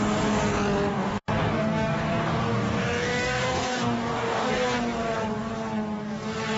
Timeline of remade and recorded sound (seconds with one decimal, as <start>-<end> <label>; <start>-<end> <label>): 0.0-0.9 recorded; 0.9-4.5 remade; 4.5-6.6 recorded